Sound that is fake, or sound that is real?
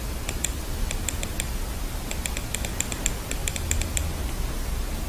real